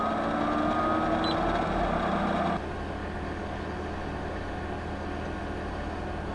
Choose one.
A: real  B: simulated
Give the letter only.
A